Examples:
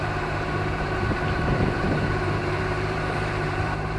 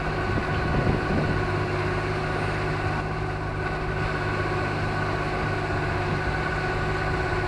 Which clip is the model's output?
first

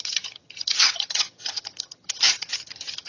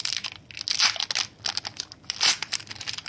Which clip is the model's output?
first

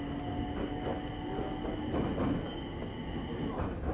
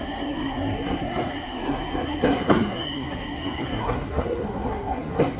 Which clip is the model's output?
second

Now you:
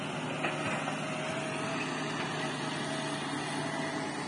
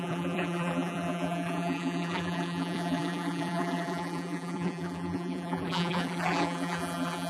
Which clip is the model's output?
second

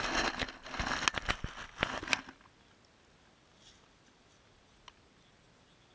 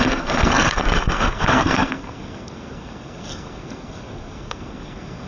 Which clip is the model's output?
second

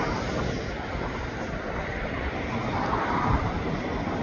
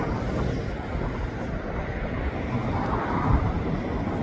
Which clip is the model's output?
first